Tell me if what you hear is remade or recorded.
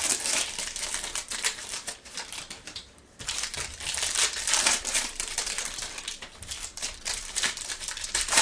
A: remade